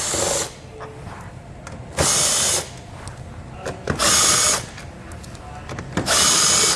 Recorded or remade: recorded